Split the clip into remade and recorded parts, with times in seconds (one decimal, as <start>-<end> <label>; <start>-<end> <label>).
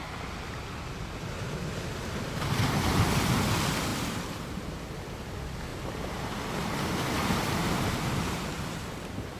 0.0-3.9 recorded; 3.9-4.6 remade; 4.6-5.7 recorded; 5.7-6.4 remade; 6.4-7.2 recorded; 7.2-8.0 remade; 8.0-9.4 recorded